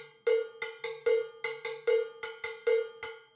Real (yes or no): yes